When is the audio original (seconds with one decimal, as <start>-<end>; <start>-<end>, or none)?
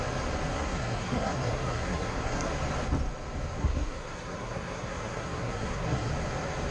0.0-0.5; 2.5-3.6; 6.1-6.7